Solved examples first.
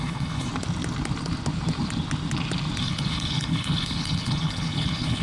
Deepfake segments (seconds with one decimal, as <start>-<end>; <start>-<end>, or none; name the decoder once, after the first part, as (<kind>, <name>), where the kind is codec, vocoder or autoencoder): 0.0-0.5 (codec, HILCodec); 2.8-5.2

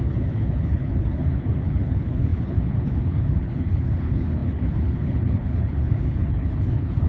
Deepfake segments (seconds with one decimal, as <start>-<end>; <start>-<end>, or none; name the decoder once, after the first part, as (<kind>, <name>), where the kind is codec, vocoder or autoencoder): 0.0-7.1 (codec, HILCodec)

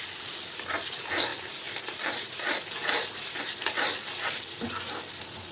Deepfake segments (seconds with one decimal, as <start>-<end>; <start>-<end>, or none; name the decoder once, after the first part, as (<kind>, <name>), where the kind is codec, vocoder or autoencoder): none

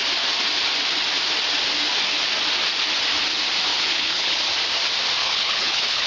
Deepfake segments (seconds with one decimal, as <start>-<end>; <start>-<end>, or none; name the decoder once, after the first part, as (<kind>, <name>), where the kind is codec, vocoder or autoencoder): 3.7-4.4 (codec, HILCodec); 5.2-6.1